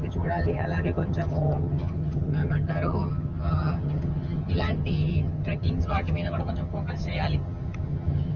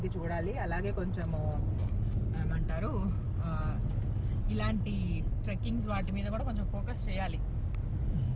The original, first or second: second